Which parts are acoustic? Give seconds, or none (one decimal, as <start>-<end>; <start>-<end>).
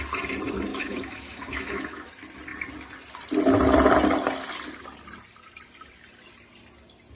0.0-0.7; 2.1-7.2